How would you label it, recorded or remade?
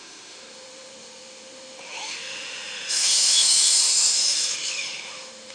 remade